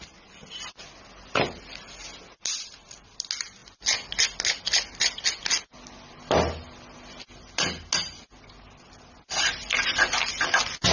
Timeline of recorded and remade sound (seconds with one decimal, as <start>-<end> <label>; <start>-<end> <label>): 0.0-10.9 recorded